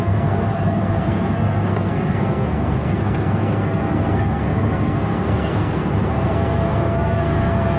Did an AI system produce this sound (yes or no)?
yes